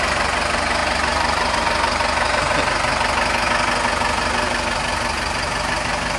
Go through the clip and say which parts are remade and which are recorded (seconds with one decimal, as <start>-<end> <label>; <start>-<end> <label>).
0.0-6.2 recorded